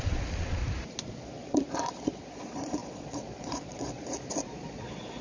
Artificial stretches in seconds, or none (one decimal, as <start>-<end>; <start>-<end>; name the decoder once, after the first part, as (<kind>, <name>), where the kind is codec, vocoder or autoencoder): 0.0-0.6 (vocoder, Vocos); 1.2-5.2